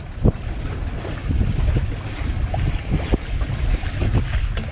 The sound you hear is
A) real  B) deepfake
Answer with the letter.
A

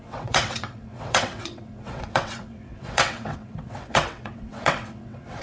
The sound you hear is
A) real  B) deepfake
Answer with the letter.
B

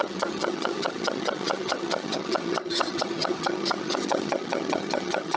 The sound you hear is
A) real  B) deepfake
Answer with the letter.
B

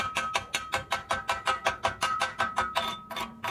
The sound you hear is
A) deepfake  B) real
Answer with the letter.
B